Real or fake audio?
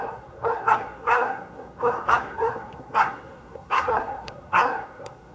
fake